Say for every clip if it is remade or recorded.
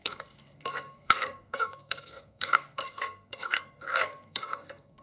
remade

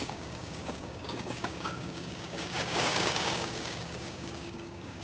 remade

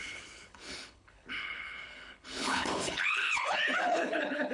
remade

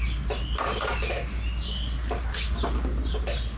recorded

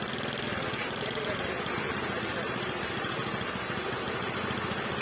recorded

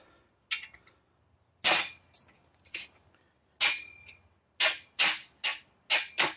recorded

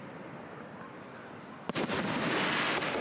recorded